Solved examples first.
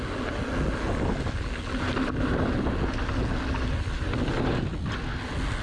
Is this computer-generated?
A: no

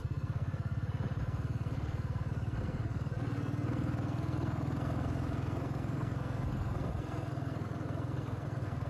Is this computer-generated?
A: yes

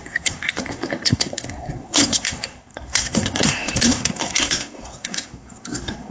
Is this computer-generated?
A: yes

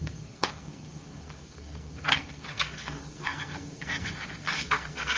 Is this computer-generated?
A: yes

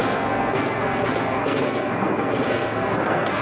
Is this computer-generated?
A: yes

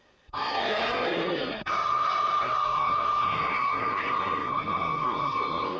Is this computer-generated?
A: yes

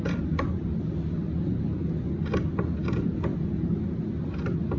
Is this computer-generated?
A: no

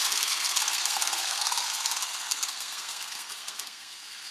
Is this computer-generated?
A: yes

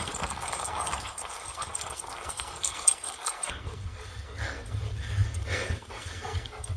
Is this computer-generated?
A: yes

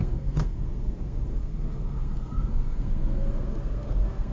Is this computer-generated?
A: yes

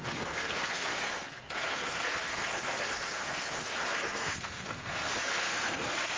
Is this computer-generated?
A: yes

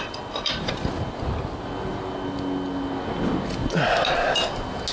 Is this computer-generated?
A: no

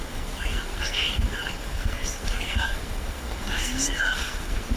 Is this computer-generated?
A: yes